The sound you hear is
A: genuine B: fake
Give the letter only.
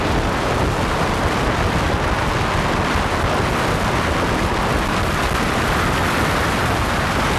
A